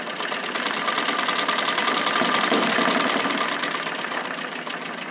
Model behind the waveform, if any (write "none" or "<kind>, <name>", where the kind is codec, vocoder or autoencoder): none